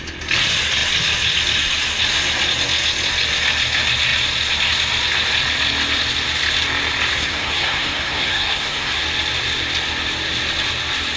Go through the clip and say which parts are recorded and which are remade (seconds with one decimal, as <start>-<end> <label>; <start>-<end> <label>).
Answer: 0.0-7.1 recorded; 7.1-9.0 remade; 9.0-11.2 recorded